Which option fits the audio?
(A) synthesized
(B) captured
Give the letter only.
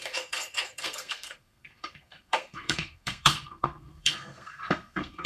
A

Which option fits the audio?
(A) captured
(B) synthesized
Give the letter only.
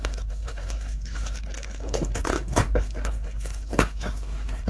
B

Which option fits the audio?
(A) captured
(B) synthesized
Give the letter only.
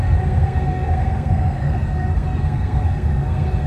B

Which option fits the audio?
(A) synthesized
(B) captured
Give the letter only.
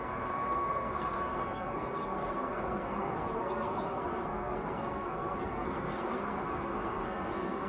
A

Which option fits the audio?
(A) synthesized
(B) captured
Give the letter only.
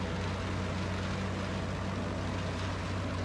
B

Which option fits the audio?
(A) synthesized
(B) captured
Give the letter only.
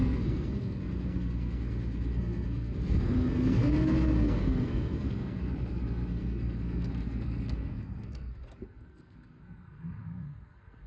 A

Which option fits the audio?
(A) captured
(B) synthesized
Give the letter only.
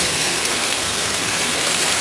B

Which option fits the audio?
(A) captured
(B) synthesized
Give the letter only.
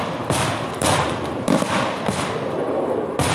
A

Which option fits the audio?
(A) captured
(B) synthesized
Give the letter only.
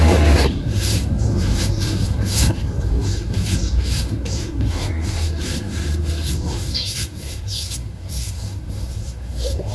B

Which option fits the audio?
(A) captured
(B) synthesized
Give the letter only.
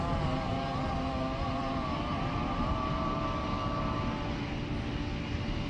A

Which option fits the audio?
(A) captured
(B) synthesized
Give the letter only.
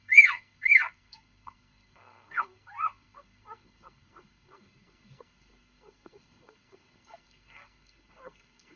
B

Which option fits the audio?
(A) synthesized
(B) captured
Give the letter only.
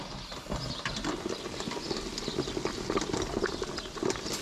B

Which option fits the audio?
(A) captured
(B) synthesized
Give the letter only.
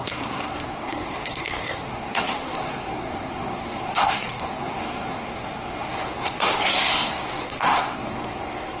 B